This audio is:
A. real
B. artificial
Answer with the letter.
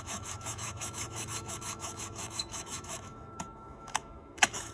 B